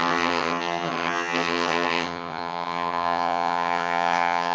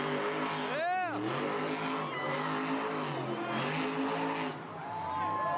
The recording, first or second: second